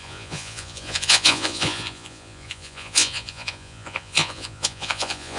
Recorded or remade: remade